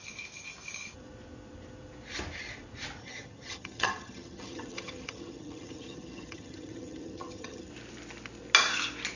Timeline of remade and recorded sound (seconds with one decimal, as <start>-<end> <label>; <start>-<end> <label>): 0.0-3.0 recorded; 3.0-7.7 remade; 7.7-9.2 recorded